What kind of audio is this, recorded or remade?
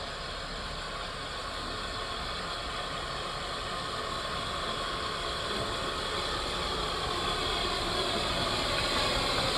recorded